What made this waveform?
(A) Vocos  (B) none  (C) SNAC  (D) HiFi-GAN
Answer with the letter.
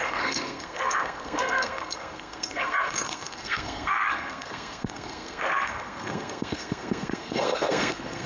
C